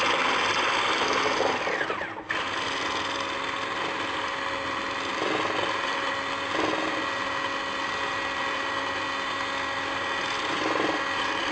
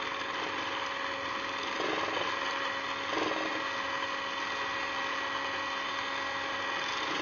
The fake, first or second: second